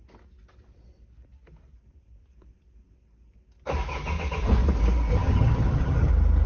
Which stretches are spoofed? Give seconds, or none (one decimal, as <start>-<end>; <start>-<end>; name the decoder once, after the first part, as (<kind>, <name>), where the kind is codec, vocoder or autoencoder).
5.1-6.1 (vocoder, HiFi-GAN)